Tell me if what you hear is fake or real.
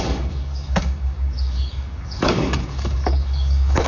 fake